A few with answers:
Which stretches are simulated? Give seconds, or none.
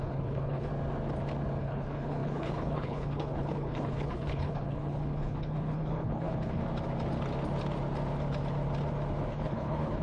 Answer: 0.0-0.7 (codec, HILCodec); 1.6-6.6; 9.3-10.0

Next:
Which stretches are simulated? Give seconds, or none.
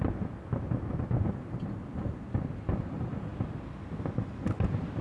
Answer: none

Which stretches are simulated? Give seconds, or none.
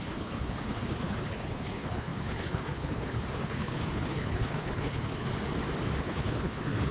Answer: 0.0-5.3 (codec, HILCodec); 6.0-6.9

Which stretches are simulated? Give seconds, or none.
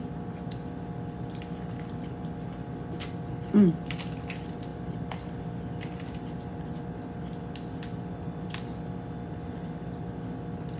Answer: none